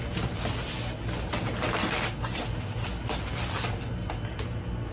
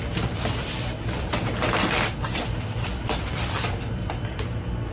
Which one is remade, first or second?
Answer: second